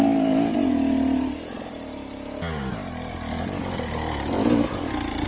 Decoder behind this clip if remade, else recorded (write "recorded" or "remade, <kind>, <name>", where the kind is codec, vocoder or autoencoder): recorded